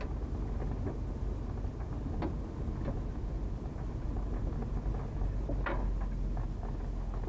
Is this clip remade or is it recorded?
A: recorded